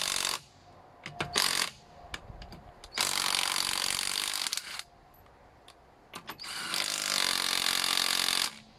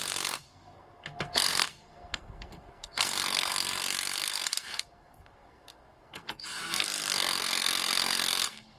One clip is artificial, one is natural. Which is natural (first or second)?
first